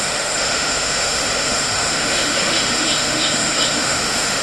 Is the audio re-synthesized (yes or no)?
yes